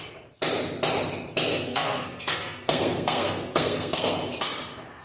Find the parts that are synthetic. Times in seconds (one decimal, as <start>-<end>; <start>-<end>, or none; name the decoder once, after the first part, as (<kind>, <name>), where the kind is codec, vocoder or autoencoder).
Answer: 1.5-4.2 (codec, SNAC)

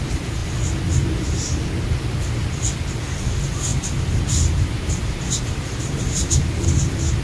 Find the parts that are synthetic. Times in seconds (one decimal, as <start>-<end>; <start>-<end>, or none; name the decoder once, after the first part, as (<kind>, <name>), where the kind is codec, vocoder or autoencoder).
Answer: none

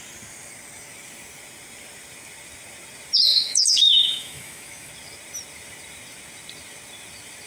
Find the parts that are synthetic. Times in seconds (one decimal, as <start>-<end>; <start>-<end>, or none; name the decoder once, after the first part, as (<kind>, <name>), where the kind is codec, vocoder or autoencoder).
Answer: 3.3-4.9 (autoencoder, DAC-VAE)

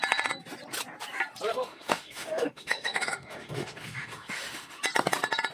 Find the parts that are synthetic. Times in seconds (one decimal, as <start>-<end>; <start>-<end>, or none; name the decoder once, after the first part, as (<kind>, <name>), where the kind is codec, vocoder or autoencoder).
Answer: 1.5-4.8 (autoencoder, DAC-VAE)